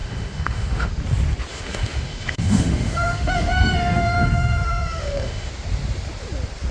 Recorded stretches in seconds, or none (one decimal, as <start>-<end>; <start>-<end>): 0.9-1.5; 5.5-6.7